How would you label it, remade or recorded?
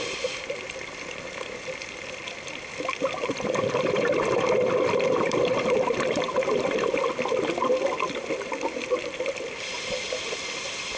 remade